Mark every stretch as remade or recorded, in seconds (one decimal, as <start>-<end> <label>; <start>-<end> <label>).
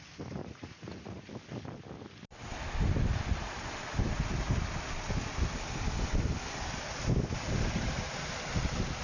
0.0-0.4 recorded; 0.4-1.3 remade; 1.3-9.0 recorded